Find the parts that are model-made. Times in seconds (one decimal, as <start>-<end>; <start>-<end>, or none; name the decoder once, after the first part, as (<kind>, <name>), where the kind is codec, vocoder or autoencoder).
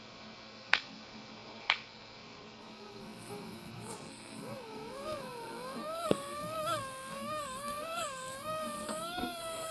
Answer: 0.0-9.7 (codec, SNAC)